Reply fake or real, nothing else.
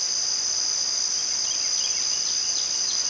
real